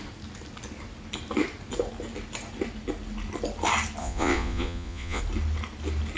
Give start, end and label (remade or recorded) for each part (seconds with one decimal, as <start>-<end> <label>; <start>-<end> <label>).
0.0-4.0 recorded; 4.0-5.2 remade; 5.2-6.2 recorded

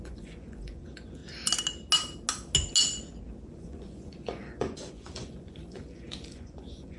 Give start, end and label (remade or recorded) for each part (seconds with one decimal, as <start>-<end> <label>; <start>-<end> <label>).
0.0-1.2 remade; 1.2-3.5 recorded; 3.5-7.0 remade

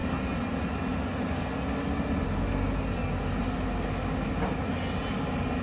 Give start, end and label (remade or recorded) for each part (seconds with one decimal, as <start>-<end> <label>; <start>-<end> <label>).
0.0-5.6 recorded